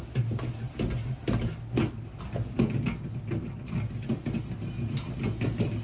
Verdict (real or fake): real